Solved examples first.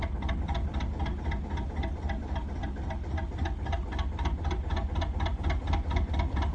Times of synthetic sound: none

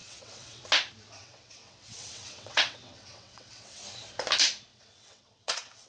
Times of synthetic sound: 0.0-0.6 (vocoder, WaveNeXt); 1.2-3.8; 4.7-5.9

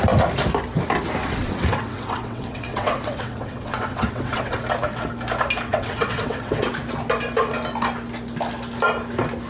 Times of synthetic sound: 1.2-4.6 (vocoder, WaveNeXt); 5.7-6.7

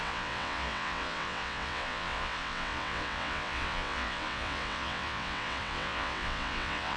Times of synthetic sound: 0.0-7.0 (vocoder, WaveNeXt)

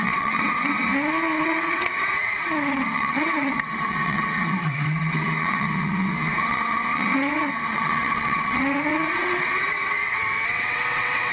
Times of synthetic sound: 0.0-0.9 (vocoder, WaveNeXt); 1.4-11.3

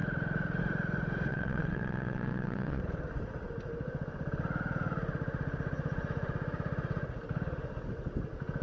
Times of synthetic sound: 1.3-2.8 (vocoder, WaveNeXt)

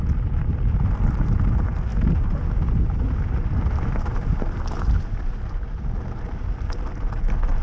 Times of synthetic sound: none

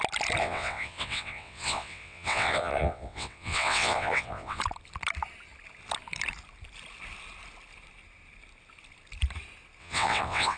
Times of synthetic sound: 0.4-4.6 (vocoder, WaveNeXt); 9.8-10.6